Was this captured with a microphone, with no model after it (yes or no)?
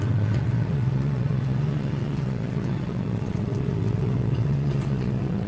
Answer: no